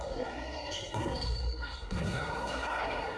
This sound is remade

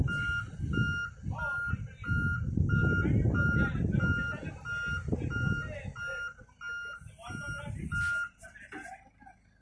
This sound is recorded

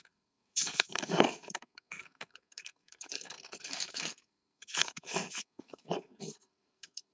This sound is remade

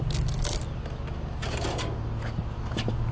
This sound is recorded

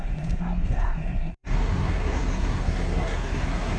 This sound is remade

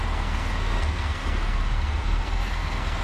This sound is remade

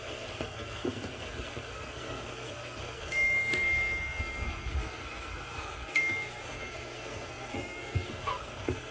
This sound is remade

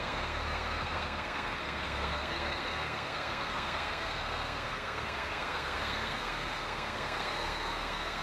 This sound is remade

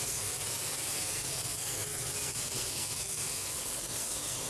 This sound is remade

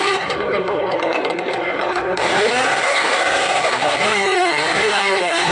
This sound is remade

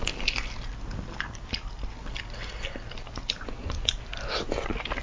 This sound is recorded